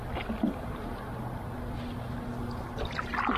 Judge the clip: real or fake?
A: real